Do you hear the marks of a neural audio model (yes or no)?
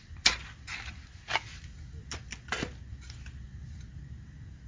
no